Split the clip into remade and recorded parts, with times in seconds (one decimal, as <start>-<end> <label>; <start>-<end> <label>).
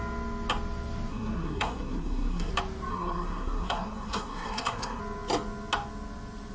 0.0-1.1 recorded; 1.1-2.5 remade; 2.5-2.9 recorded; 2.9-5.0 remade; 5.0-6.5 recorded